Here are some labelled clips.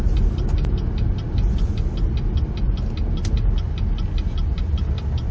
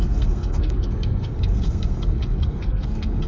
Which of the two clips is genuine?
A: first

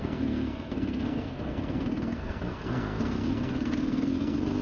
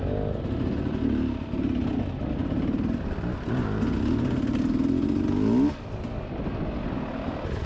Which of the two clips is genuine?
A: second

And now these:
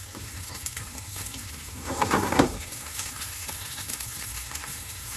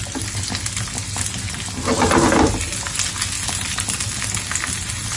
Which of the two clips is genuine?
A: second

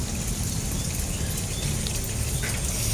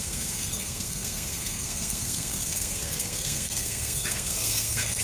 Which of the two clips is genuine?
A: first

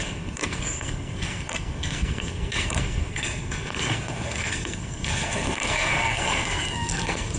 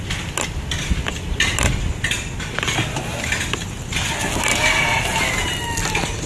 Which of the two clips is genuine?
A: second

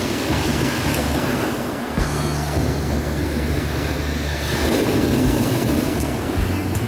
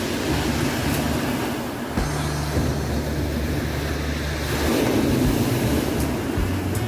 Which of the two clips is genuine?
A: second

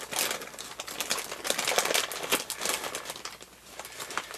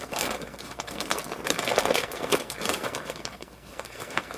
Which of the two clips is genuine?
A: first